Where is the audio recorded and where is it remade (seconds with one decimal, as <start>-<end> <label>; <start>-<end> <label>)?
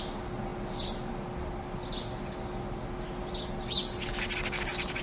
0.0-5.0 recorded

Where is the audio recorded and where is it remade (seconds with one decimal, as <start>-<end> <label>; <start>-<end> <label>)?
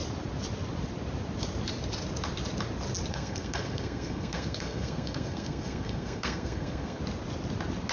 0.0-3.1 recorded; 3.1-7.0 remade; 7.0-7.9 recorded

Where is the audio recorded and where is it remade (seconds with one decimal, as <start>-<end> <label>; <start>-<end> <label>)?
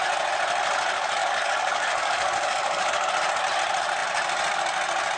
0.0-1.2 recorded; 1.2-3.1 remade; 3.1-5.2 recorded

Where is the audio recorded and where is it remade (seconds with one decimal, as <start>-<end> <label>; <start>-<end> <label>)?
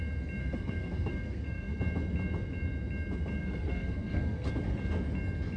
0.0-0.4 recorded; 0.4-1.8 remade; 1.8-3.4 recorded; 3.4-4.5 remade; 4.5-5.6 recorded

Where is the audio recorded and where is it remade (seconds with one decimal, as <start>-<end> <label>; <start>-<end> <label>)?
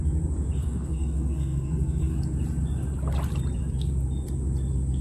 0.0-0.6 recorded; 0.6-2.2 remade; 2.2-5.0 recorded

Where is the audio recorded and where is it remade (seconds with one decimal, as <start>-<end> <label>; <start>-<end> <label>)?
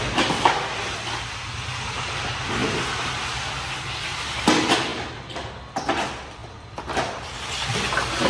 0.0-8.3 recorded